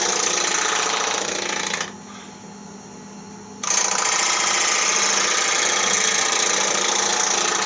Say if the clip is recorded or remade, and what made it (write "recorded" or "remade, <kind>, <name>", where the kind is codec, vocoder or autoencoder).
recorded